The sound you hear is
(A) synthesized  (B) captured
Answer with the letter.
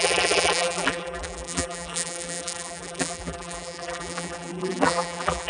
A